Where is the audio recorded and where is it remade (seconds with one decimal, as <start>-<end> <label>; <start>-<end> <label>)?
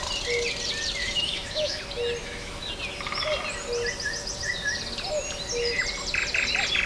0.0-1.0 recorded; 1.0-1.8 remade; 1.8-2.2 recorded; 2.2-2.7 remade; 2.7-6.9 recorded